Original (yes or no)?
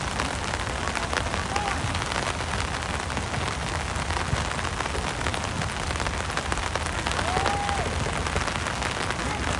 yes